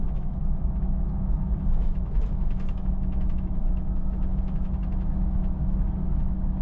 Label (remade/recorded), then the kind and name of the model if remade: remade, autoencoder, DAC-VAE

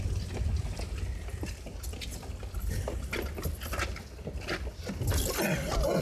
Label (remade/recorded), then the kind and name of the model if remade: recorded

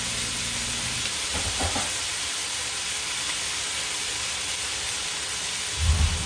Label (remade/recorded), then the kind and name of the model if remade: recorded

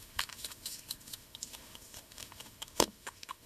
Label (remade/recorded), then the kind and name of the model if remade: remade, autoencoder, DAC-VAE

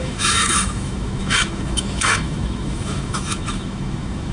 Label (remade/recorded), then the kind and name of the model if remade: remade, autoencoder, DAC-VAE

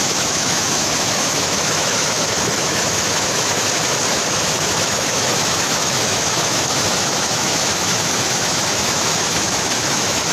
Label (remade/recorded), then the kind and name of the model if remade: remade, autoencoder, DAC-VAE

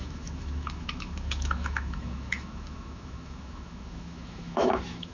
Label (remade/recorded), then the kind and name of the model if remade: remade, autoencoder, DAC-VAE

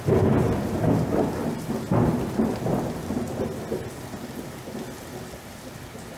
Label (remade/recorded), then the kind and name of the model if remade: recorded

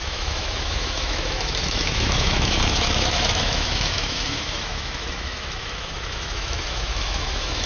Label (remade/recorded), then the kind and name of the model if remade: remade, autoencoder, DAC-VAE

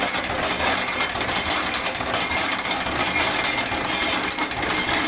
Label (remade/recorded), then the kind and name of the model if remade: recorded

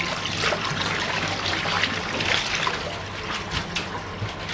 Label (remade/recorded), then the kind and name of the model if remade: recorded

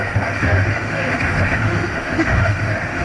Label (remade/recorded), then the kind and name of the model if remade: remade, autoencoder, DAC-VAE